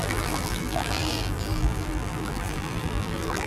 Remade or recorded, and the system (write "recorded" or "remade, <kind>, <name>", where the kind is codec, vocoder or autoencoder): remade, vocoder, BigVGAN v2